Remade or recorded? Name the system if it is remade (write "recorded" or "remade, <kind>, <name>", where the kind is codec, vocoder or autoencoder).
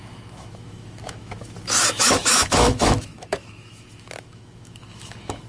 remade, autoencoder, DAC-VAE